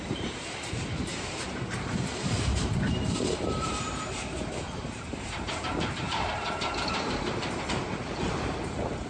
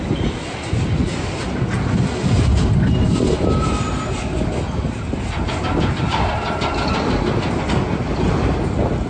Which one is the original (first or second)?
second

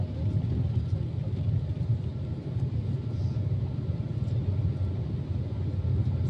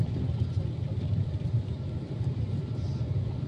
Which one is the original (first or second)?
first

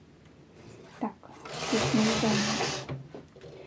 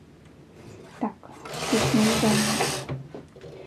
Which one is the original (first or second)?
second